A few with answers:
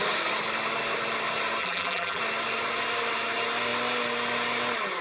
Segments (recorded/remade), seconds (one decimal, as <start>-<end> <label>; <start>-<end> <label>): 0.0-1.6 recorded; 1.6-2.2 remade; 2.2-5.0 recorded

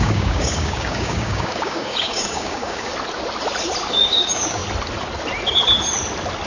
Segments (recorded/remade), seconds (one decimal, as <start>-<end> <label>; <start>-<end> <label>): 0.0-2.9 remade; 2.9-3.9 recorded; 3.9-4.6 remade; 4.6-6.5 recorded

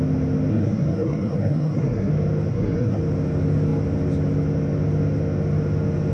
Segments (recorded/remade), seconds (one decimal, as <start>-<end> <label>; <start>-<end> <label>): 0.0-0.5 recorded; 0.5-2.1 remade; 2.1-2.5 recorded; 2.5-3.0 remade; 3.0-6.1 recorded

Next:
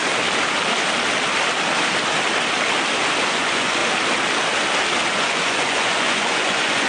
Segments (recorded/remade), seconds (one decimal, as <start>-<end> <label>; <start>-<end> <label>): 0.0-3.2 recorded; 3.2-3.8 remade; 3.8-5.1 recorded; 5.1-6.9 remade

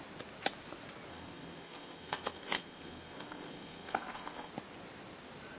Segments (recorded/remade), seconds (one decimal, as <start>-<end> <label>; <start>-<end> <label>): 0.0-1.1 recorded; 1.1-4.5 remade; 4.5-5.6 recorded

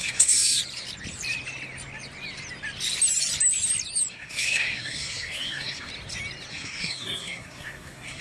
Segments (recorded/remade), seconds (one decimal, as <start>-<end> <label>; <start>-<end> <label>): 0.0-0.6 remade; 0.6-4.1 recorded; 4.1-5.9 remade; 5.9-6.5 recorded; 6.5-8.2 remade